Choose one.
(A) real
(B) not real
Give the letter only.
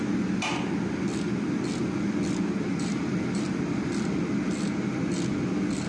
A